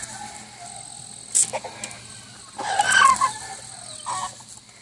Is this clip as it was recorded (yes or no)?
yes